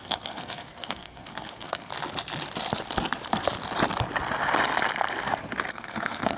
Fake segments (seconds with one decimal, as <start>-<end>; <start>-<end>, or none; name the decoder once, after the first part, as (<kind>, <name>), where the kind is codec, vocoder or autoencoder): 0.0-1.9 (codec, SNAC); 5.7-6.4